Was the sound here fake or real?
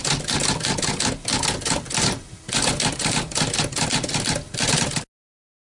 real